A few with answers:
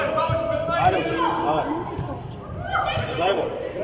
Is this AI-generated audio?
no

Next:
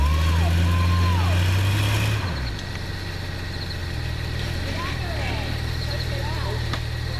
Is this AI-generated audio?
no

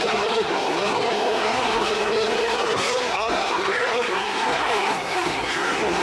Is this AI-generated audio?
yes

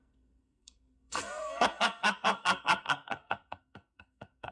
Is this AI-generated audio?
yes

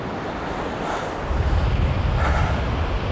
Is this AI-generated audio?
no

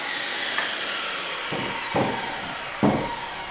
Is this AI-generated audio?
no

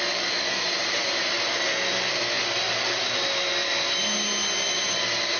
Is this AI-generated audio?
no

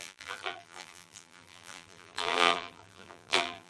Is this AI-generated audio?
yes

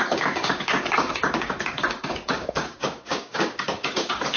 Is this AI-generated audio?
yes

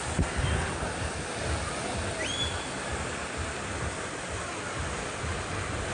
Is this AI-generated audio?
no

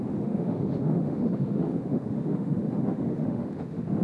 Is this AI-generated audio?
yes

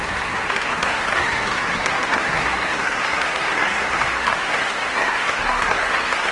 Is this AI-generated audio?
yes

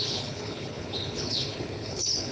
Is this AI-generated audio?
yes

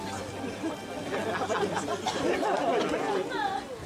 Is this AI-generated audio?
no